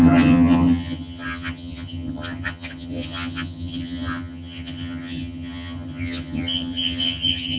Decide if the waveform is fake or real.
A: fake